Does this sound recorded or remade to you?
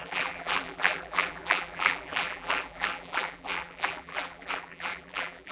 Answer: remade